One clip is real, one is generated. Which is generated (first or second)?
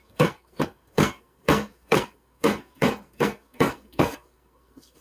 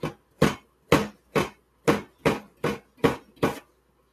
first